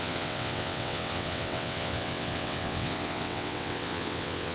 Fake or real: fake